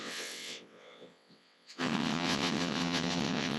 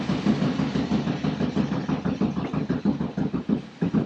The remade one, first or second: first